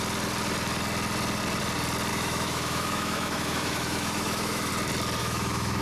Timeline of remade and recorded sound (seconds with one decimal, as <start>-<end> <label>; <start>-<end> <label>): 0.0-2.1 recorded; 2.1-4.7 remade; 4.7-5.2 recorded; 5.2-5.8 remade